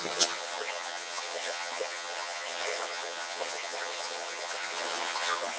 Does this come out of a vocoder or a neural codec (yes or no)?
yes